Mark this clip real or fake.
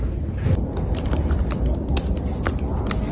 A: real